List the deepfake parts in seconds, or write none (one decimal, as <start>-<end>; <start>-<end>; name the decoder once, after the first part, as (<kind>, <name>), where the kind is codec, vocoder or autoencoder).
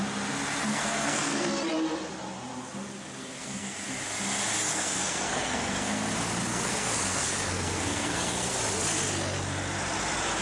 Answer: 0.7-1.5 (codec, SNAC); 3.2-3.9; 4.7-6.1; 6.5-8.6